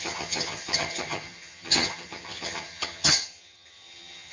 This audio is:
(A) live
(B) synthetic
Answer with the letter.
B